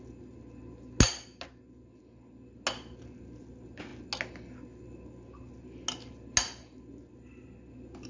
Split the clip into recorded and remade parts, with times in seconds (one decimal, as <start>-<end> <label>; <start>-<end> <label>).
0.0-8.1 recorded